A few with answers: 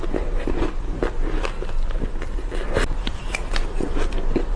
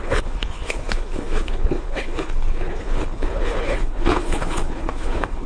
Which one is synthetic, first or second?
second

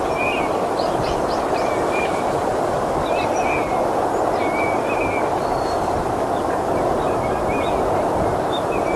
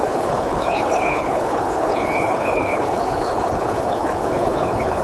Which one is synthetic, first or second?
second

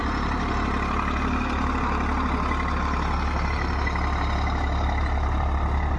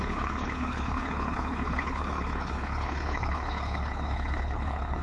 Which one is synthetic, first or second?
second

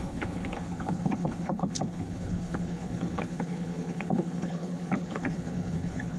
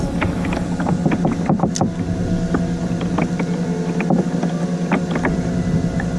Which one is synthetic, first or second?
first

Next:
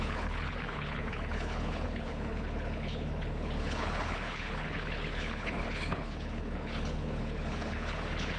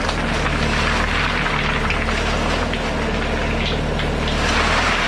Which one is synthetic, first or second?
first